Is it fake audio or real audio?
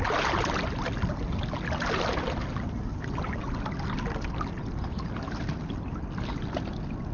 real